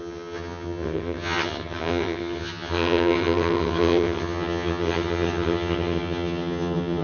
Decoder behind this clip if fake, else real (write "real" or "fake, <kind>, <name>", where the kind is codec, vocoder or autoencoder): fake, vocoder, HiFi-GAN